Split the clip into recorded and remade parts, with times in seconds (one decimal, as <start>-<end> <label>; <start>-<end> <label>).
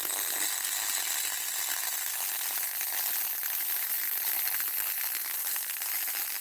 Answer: 0.0-5.2 recorded; 5.2-5.9 remade; 5.9-6.4 recorded